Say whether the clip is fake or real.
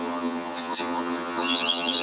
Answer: fake